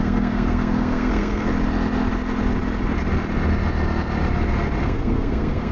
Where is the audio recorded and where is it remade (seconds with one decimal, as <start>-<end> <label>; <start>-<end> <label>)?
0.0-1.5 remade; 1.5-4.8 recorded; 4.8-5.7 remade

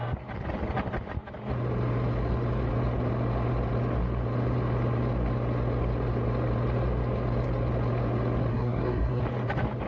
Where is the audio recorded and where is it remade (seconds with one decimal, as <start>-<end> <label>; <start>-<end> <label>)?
0.0-8.5 recorded; 8.5-9.2 remade; 9.2-9.9 recorded

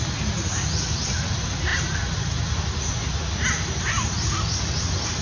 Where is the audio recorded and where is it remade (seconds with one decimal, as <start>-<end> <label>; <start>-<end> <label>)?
0.0-5.2 recorded

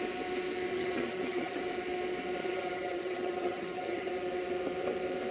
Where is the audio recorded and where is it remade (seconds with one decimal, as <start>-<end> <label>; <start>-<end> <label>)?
0.0-0.7 recorded; 0.7-1.6 remade; 1.6-2.4 recorded; 2.4-4.1 remade; 4.1-5.3 recorded

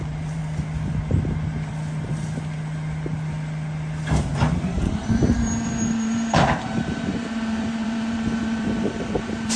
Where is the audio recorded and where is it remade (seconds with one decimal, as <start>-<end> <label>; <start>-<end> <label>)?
0.0-0.4 remade; 0.4-4.5 recorded; 4.5-9.6 remade